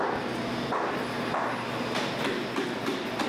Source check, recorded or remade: recorded